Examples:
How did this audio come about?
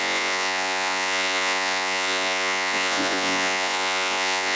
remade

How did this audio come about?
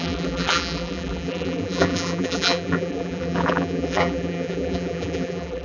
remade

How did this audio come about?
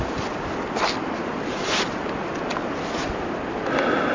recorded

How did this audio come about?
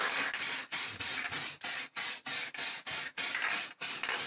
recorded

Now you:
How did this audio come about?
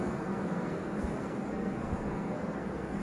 remade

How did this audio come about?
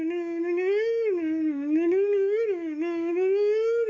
remade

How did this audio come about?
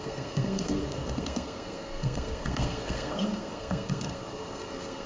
remade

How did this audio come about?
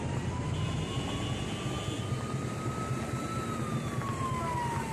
recorded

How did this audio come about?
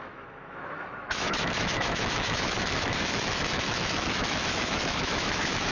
remade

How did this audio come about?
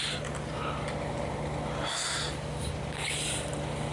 recorded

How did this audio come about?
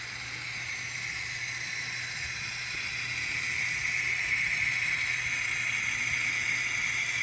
recorded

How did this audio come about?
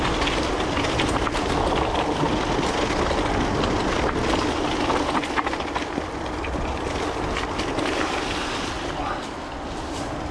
recorded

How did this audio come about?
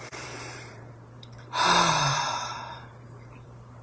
remade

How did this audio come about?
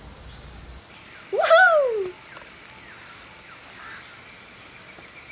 recorded